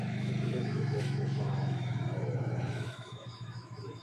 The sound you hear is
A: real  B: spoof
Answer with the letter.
B